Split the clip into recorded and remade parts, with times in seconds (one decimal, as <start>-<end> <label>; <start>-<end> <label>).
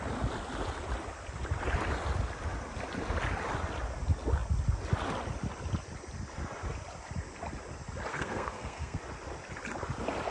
0.0-8.1 recorded; 8.1-9.0 remade; 9.0-10.3 recorded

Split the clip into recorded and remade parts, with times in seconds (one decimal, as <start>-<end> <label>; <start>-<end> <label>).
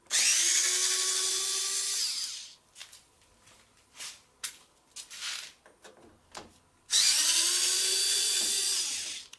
0.0-9.4 recorded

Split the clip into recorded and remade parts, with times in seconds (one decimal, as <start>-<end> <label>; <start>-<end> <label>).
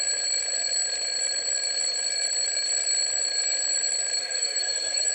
0.0-4.2 recorded; 4.2-5.1 remade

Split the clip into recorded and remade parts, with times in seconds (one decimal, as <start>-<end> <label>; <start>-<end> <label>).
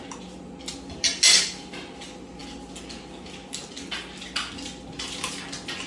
0.0-5.9 recorded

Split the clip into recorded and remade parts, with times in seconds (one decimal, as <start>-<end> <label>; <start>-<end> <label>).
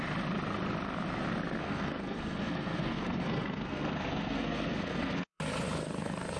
0.0-1.6 recorded; 1.6-5.4 remade; 5.4-6.4 recorded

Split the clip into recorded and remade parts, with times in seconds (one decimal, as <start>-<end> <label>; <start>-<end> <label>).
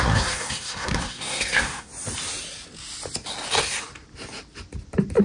0.0-1.9 remade; 1.9-5.2 recorded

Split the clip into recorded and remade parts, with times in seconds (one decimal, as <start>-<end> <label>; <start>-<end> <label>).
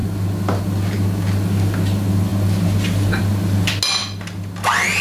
0.0-5.0 recorded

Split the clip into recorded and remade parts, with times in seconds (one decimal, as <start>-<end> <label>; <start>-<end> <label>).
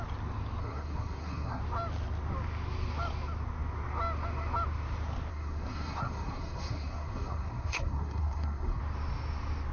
0.0-0.6 recorded; 0.6-1.6 remade; 1.6-5.3 recorded; 5.3-8.8 remade; 8.8-9.7 recorded